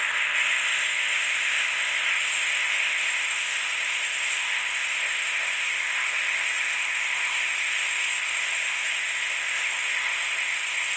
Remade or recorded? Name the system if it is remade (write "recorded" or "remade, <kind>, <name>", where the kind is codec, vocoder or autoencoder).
remade, codec, ZipCodec